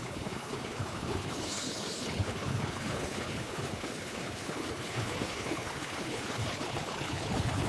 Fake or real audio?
fake